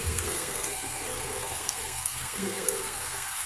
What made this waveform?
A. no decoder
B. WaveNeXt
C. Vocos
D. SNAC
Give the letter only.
D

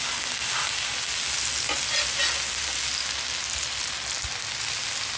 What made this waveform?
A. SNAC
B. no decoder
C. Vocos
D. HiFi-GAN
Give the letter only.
B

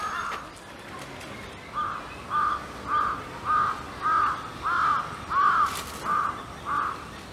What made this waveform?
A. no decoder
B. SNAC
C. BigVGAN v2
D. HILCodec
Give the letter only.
A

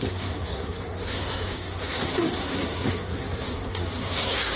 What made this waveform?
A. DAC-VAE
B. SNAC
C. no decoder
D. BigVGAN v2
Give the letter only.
B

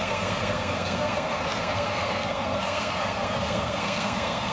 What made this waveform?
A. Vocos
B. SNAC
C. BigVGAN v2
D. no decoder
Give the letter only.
B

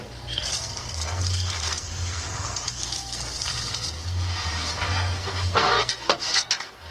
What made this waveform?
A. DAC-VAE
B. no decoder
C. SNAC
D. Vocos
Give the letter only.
C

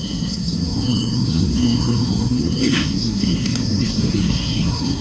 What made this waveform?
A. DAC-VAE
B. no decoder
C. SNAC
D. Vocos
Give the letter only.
C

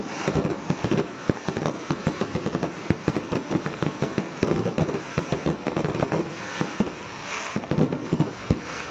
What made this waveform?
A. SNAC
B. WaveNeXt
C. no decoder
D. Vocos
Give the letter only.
A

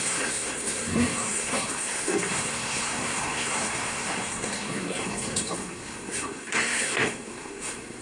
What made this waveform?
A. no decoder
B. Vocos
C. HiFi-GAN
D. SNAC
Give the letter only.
D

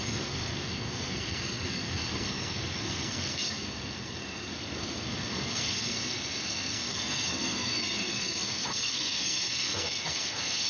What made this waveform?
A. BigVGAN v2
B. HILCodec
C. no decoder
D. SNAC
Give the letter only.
D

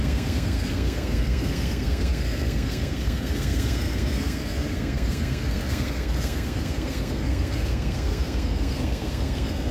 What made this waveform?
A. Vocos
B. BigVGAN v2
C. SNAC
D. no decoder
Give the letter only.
C